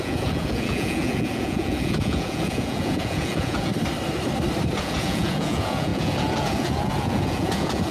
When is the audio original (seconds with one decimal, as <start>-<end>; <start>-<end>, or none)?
3.7-4.8